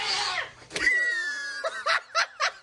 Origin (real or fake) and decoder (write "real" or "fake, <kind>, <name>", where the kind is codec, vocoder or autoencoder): real